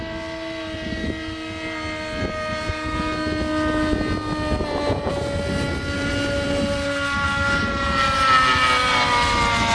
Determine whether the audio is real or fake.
real